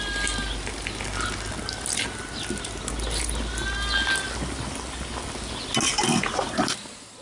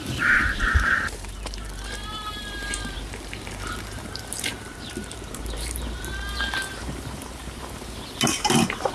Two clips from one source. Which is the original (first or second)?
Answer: first